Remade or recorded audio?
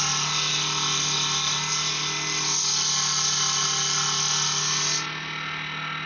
recorded